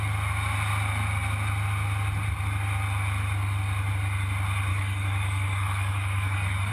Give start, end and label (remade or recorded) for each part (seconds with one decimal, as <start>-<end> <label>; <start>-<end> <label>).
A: 0.0-4.7 recorded; 4.7-6.7 remade

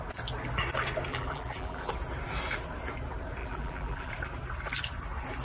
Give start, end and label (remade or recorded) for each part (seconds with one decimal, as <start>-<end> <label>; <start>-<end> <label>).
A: 0.0-1.1 recorded; 1.1-1.9 remade; 1.9-3.4 recorded; 3.4-4.1 remade; 4.1-5.4 recorded

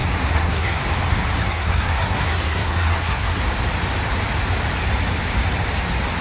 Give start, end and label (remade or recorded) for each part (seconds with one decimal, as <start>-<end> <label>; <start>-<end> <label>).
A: 0.0-0.8 remade; 0.8-1.4 recorded; 1.4-3.4 remade; 3.4-6.2 recorded

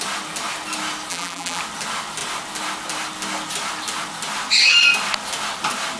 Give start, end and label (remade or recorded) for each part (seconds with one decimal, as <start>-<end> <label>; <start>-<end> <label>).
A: 0.0-1.1 recorded; 1.1-1.6 remade; 1.6-6.0 recorded